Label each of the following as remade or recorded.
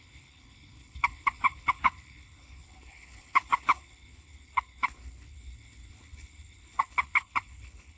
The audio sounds remade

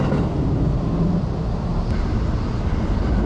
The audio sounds recorded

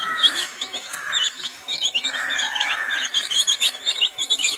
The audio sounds remade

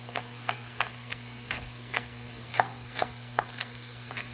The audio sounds remade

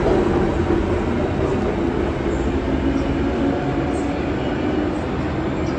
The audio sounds recorded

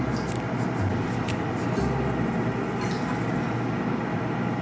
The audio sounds recorded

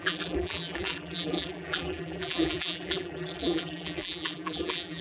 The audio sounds remade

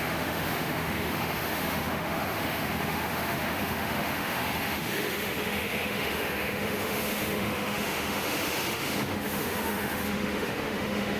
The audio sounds remade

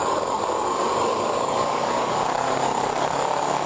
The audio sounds remade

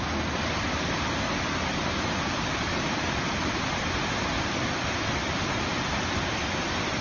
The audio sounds recorded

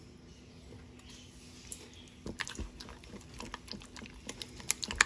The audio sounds recorded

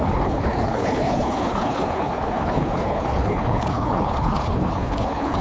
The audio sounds remade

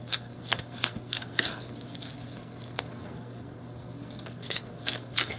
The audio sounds remade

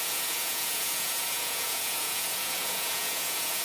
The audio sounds remade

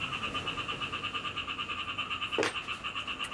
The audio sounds recorded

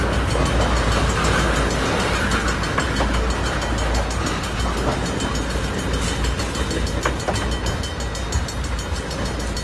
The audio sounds recorded